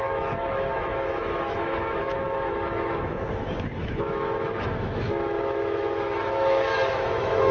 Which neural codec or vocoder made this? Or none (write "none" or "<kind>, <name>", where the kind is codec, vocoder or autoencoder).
autoencoder, DAC-VAE